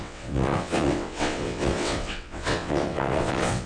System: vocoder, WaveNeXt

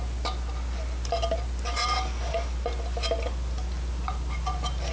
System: none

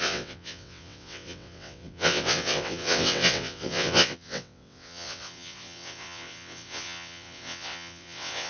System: vocoder, WaveNeXt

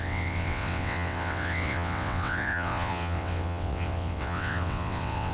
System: vocoder, WaveNeXt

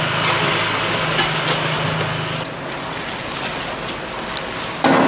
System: none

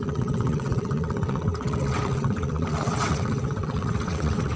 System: vocoder, WaveNeXt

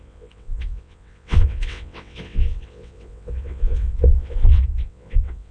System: vocoder, WaveNeXt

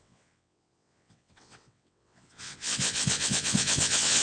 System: vocoder, WaveNeXt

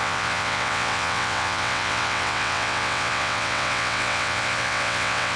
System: vocoder, WaveNeXt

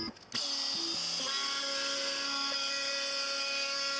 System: none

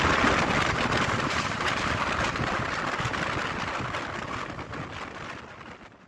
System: none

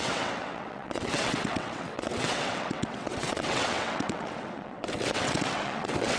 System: vocoder, WaveNeXt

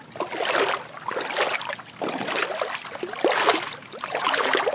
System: none